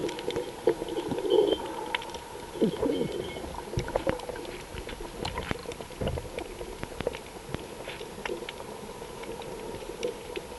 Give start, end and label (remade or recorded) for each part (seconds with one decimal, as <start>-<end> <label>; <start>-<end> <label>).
0.0-10.6 recorded